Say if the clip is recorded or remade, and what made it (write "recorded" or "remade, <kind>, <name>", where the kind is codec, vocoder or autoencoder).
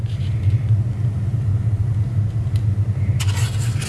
recorded